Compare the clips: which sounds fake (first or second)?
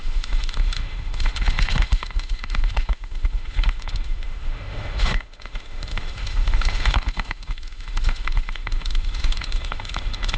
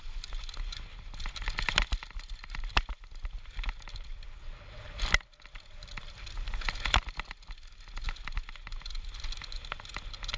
first